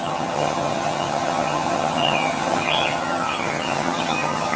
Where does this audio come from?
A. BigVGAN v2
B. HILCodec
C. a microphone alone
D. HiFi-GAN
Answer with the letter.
D